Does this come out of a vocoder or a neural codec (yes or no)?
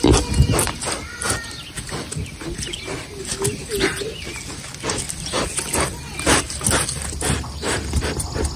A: no